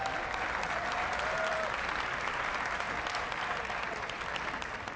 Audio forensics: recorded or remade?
recorded